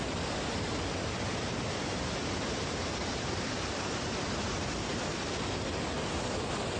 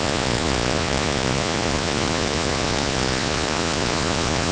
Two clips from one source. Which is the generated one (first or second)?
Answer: second